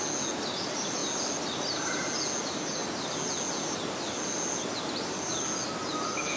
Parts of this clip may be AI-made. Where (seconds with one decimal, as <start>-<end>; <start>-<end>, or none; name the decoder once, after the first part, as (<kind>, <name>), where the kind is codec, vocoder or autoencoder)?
none